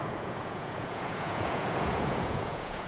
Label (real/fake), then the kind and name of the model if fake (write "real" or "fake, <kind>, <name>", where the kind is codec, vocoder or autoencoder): fake, vocoder, Vocos